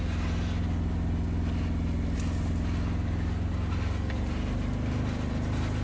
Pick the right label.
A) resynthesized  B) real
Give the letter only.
B